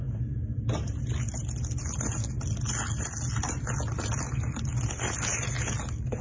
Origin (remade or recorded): recorded